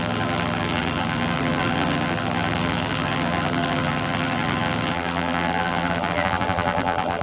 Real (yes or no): no